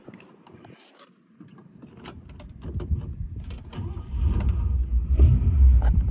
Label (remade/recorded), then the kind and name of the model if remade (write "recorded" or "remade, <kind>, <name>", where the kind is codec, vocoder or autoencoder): remade, vocoder, BigVGAN v2